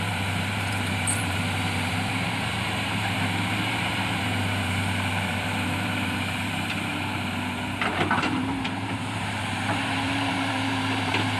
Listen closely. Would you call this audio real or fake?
fake